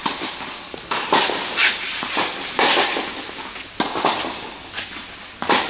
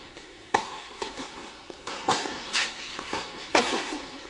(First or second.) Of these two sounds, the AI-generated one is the second